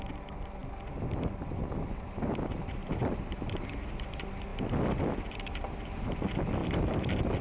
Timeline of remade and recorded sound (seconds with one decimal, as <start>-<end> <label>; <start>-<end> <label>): 0.0-2.8 recorded; 2.8-3.8 remade; 3.8-6.6 recorded; 6.6-7.4 remade